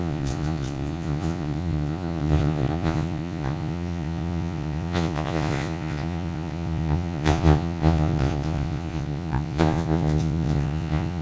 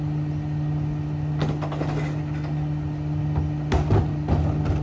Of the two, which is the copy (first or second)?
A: first